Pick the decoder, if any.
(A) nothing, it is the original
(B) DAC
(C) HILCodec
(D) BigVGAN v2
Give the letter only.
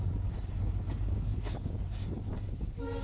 B